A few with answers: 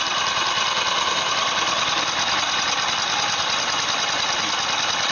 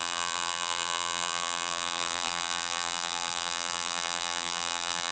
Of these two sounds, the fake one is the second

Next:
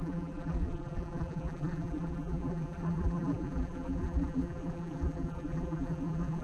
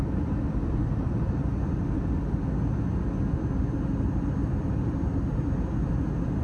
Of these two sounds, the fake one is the first